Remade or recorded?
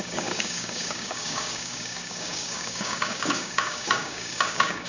remade